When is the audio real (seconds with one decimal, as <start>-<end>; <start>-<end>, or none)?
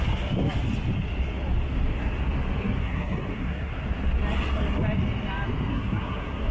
0.0-2.8; 3.8-5.7